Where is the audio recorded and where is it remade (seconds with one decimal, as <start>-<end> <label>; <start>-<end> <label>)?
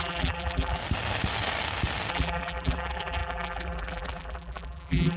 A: 0.0-0.8 remade; 0.8-2.1 recorded; 2.1-5.2 remade